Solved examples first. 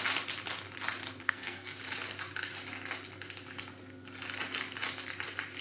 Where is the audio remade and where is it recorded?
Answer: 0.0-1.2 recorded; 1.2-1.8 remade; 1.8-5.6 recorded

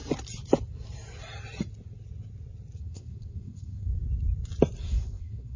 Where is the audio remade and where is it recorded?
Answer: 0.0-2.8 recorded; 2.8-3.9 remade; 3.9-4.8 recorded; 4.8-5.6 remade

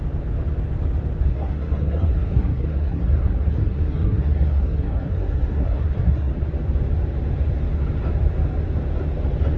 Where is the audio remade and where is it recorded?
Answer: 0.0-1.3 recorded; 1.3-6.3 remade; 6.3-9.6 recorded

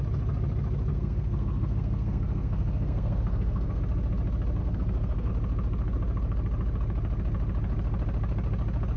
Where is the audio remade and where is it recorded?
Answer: 0.0-0.9 recorded; 0.9-3.8 remade; 3.8-4.6 recorded; 4.6-5.3 remade; 5.3-9.0 recorded